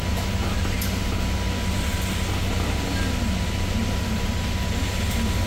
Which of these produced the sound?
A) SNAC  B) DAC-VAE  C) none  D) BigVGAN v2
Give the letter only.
C